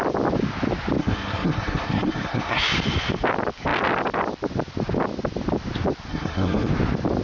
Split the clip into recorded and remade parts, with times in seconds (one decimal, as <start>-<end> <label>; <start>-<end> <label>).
0.0-1.0 recorded; 1.0-2.6 remade; 2.6-6.1 recorded; 6.1-6.7 remade; 6.7-7.2 recorded